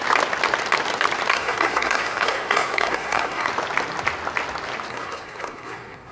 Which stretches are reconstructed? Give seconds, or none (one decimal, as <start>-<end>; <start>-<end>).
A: 1.3-3.5; 4.9-6.1